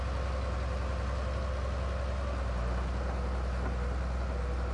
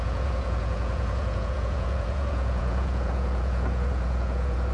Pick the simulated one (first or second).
second